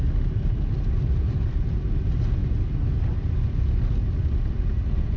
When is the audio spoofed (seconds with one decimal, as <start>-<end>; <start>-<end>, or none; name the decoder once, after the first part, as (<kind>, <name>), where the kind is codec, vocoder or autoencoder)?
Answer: none